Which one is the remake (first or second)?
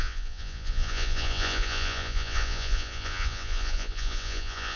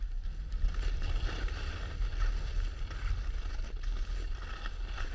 first